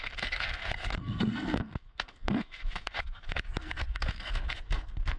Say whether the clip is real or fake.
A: fake